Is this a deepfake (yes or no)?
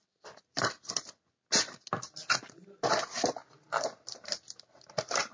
no